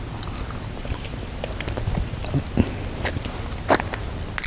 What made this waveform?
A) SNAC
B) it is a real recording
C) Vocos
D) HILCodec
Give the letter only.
B